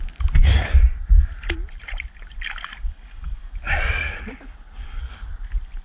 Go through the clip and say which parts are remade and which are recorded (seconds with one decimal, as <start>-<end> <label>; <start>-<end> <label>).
0.0-4.0 recorded; 4.0-5.0 remade; 5.0-5.8 recorded